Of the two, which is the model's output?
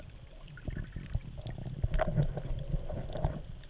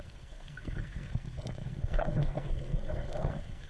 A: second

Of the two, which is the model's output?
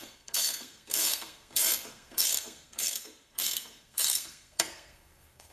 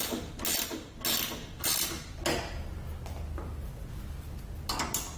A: first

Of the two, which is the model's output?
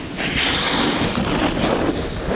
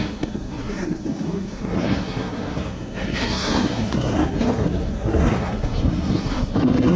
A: second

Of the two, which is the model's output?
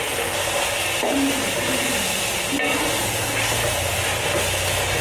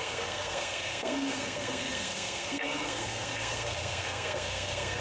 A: second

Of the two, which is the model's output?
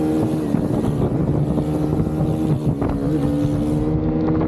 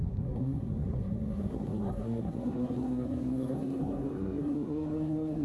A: second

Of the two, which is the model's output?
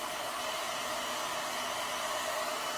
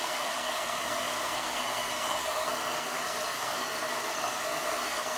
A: second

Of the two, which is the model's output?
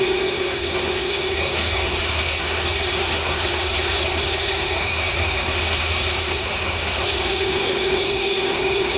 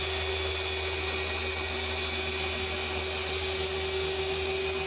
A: first